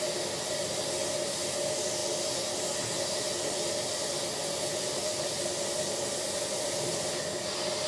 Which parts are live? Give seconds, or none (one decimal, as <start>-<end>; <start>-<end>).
0.0-7.9